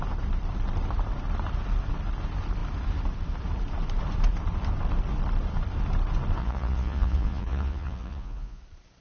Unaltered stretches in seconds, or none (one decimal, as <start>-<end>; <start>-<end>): 0.0-6.4; 8.6-9.0